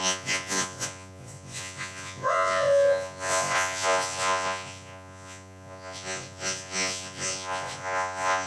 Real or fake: fake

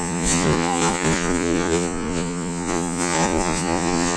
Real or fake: fake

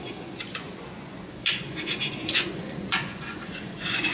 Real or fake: fake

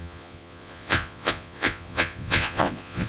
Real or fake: fake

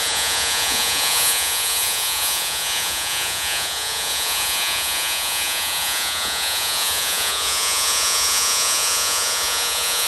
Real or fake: fake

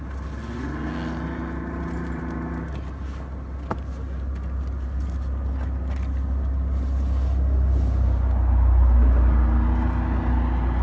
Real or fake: real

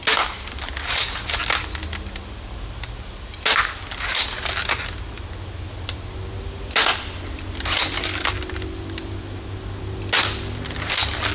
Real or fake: real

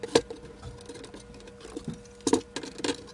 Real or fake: real